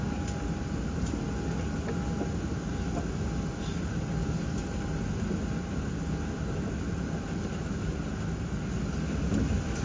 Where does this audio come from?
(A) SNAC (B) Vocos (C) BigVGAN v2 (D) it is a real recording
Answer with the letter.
D